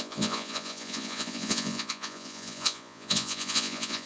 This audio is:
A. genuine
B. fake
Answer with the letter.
B